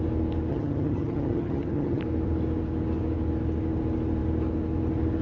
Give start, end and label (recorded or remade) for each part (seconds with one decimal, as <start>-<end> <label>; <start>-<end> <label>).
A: 0.0-0.5 recorded; 0.5-2.0 remade; 2.0-5.2 recorded